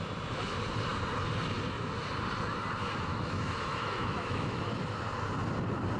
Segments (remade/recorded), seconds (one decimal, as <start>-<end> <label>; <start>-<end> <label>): 0.0-3.1 recorded; 3.1-4.6 remade; 4.6-6.0 recorded

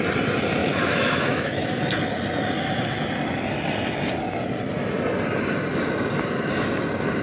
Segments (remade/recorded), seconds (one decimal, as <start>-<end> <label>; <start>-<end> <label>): 0.0-0.6 recorded; 0.6-1.8 remade; 1.8-7.2 recorded

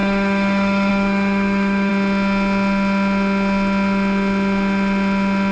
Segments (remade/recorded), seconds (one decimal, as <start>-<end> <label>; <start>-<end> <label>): 0.0-1.9 remade; 1.9-5.5 recorded

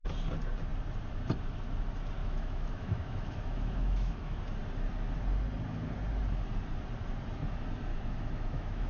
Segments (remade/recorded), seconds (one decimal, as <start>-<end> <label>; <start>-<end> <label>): 0.0-2.2 recorded; 2.2-4.4 remade; 4.4-7.9 recorded; 7.9-8.9 remade

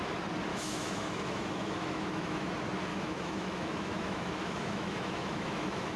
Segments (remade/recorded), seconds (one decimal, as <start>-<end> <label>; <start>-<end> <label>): 0.0-0.5 recorded; 0.5-2.5 remade; 2.5-2.9 recorded; 2.9-6.0 remade

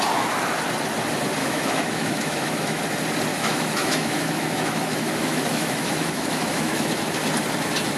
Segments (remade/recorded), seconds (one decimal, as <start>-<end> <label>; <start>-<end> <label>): 0.0-1.4 recorded; 1.4-2.8 remade; 2.8-3.3 recorded; 3.3-6.9 remade; 6.9-8.0 recorded

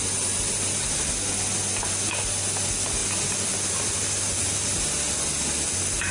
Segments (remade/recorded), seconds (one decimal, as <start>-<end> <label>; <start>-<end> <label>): 0.0-6.1 recorded